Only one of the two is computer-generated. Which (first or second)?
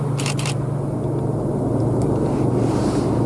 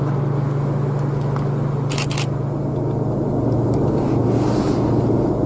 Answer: first